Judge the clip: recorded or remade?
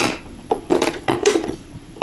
remade